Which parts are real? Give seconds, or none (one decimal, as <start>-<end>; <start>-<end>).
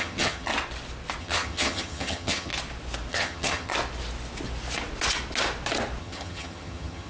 0.5-1.2; 2.5-3.1; 3.7-6.0